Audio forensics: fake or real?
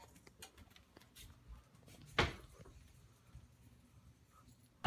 real